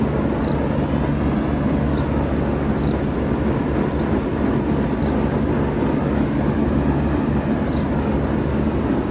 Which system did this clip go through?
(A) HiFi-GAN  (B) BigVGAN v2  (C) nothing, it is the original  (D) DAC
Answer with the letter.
C